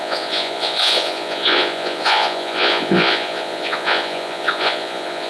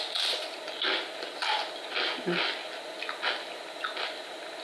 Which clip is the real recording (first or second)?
second